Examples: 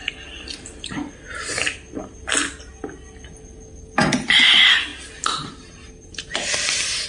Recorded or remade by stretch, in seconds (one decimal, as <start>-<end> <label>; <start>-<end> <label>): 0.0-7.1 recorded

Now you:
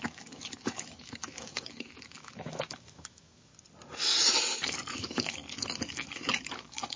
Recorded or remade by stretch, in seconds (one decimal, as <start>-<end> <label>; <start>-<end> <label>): 0.0-3.5 remade; 3.5-4.9 recorded; 4.9-5.4 remade; 5.4-5.9 recorded; 5.9-7.0 remade

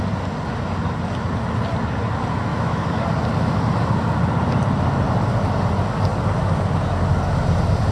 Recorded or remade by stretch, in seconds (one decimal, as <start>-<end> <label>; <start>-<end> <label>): 0.0-2.5 recorded; 2.5-3.0 remade; 3.0-7.9 recorded

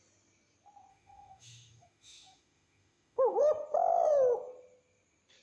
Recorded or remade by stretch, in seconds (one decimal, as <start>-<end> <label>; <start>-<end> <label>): 0.0-0.9 recorded; 0.9-3.4 remade; 3.4-5.4 recorded